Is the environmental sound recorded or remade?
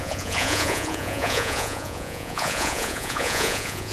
remade